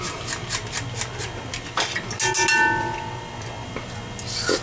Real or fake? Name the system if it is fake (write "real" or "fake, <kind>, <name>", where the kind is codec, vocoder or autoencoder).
real